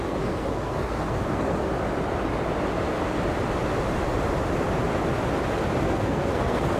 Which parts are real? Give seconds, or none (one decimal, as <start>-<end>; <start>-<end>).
1.7-5.8